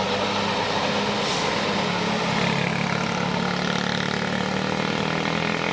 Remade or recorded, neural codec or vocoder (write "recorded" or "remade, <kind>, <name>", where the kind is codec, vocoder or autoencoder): recorded